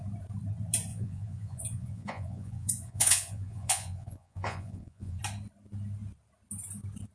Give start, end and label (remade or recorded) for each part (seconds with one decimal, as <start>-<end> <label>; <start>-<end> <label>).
0.0-0.9 recorded; 0.9-5.2 remade; 5.2-7.1 recorded